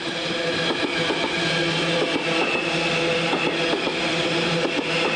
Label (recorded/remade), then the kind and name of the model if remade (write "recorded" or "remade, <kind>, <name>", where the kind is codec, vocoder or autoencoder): recorded